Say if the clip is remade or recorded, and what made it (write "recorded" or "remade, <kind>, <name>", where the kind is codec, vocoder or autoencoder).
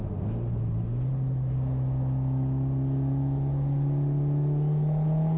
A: recorded